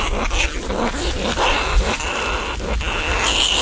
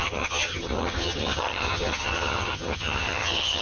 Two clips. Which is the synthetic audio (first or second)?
second